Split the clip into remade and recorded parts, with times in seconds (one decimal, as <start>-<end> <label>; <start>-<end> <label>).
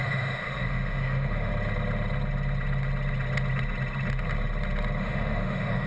0.0-1.5 remade; 1.5-5.0 recorded; 5.0-5.9 remade